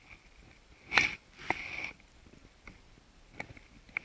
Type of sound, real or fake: real